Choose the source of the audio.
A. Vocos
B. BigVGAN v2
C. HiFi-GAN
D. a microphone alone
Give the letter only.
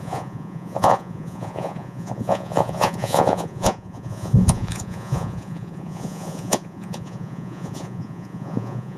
A